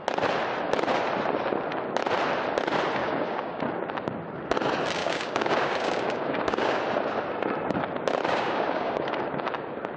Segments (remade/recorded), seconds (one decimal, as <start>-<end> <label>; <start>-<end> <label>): 0.0-3.0 recorded; 3.0-3.6 remade; 3.6-5.0 recorded; 5.0-6.8 remade; 6.8-8.3 recorded; 8.3-9.3 remade; 9.3-10.0 recorded